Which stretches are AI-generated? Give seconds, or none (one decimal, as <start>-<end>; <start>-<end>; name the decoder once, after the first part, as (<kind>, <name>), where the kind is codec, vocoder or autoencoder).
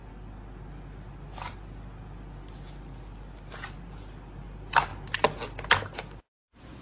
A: none